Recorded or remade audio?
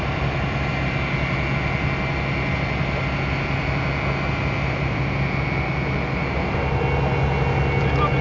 recorded